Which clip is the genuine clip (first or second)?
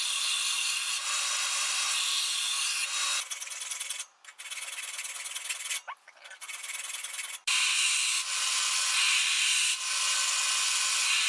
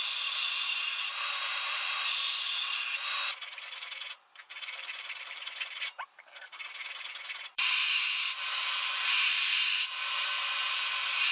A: first